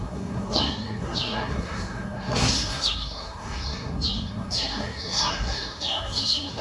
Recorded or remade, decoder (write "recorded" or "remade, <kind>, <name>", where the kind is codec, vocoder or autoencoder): remade, codec, SNAC